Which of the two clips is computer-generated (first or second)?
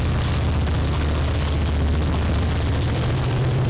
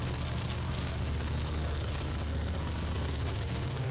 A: second